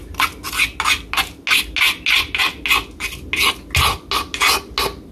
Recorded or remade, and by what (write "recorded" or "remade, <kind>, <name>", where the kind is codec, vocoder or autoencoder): recorded